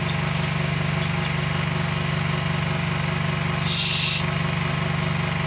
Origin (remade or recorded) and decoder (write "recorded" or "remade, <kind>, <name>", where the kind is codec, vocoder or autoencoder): recorded